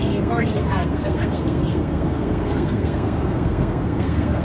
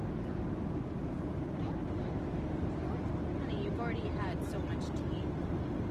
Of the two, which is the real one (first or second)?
second